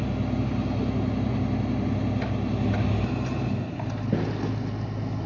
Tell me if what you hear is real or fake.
real